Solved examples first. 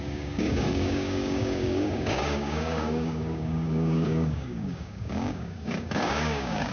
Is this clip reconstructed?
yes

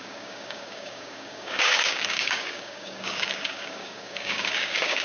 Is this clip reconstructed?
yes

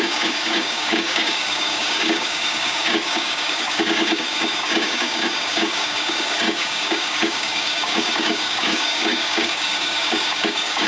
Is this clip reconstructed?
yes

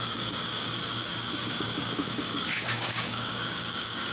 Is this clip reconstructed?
yes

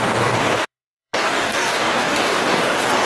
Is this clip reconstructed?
yes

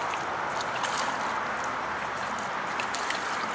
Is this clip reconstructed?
no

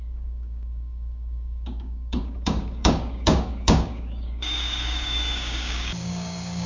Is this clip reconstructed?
yes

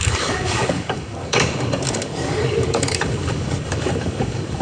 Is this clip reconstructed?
yes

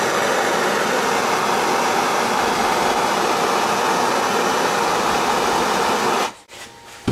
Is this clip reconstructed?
no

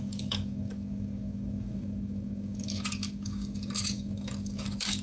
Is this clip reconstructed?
yes